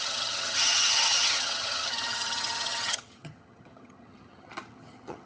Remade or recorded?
remade